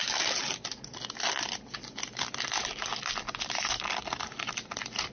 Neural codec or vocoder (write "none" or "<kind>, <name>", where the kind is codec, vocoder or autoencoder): none